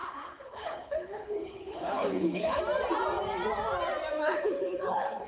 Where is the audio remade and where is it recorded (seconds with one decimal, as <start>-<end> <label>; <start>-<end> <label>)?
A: 0.0-2.6 remade; 2.6-4.2 recorded; 4.2-5.3 remade